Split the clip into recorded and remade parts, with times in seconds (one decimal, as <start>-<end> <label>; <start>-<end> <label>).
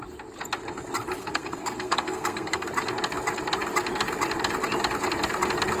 0.0-1.2 recorded; 1.2-2.7 remade; 2.7-5.8 recorded